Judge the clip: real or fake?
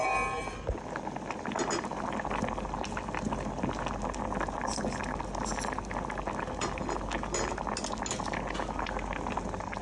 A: real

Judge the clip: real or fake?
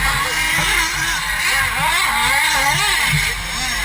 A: real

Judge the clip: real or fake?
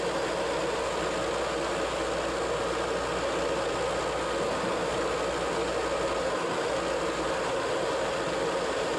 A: real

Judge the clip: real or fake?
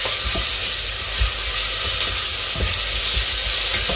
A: real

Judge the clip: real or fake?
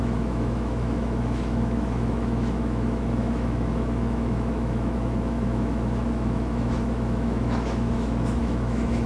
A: fake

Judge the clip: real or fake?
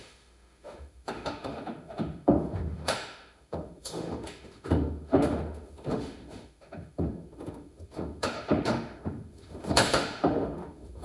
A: fake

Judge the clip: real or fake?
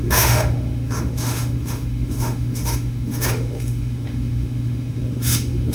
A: fake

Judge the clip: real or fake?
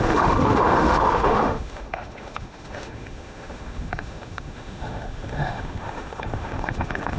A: fake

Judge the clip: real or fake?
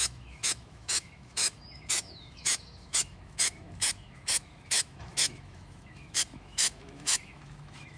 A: fake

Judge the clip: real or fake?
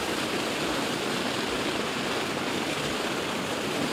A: real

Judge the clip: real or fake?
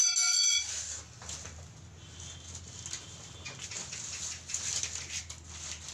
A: real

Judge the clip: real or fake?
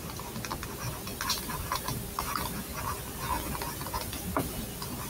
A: real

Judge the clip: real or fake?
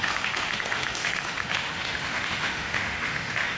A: fake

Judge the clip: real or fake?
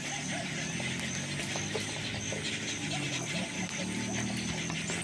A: real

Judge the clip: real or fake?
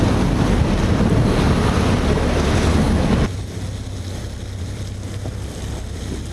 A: real